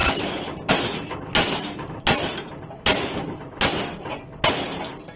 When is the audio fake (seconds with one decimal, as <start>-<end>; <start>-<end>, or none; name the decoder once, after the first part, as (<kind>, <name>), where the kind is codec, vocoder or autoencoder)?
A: none